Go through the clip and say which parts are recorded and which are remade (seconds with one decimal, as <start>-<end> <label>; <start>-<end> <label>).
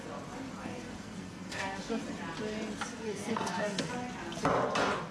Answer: 0.0-0.6 recorded; 0.6-2.0 remade; 2.0-2.9 recorded; 2.9-3.9 remade; 3.9-5.1 recorded